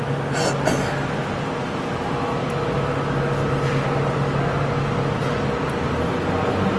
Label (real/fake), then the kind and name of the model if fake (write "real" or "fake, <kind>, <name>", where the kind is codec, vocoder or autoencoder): real